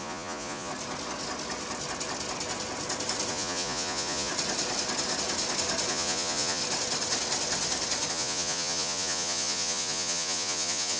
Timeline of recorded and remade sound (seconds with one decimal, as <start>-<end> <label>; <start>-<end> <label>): 0.0-0.7 remade; 0.7-3.3 recorded; 3.3-4.3 remade; 4.3-5.9 recorded; 5.9-6.6 remade; 6.6-8.1 recorded; 8.1-11.0 remade